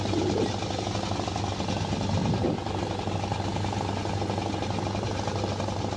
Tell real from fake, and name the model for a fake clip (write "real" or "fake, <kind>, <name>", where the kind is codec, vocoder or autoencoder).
real